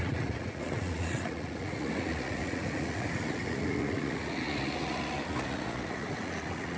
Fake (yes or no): yes